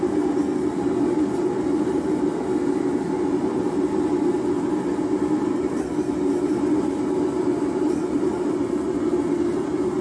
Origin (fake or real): real